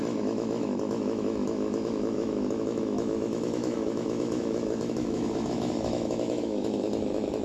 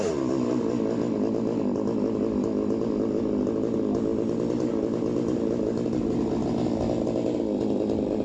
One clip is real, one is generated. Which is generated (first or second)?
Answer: first